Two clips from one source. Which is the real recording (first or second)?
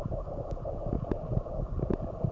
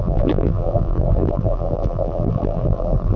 first